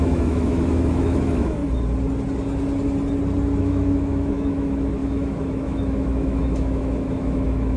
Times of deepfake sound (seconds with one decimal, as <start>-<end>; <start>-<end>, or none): 0.0-1.6; 3.6-7.8